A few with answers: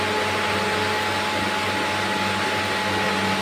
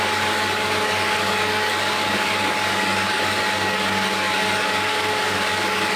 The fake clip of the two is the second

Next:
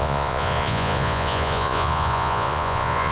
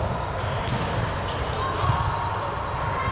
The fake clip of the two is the first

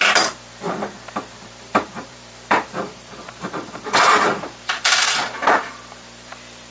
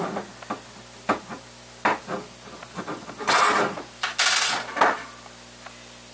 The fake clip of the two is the first